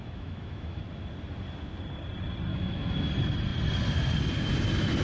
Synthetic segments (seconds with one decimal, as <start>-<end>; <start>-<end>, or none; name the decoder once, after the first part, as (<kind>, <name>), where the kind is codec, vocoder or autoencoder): 0.0-0.8 (autoencoder, DAC-VAE); 2.5-3.1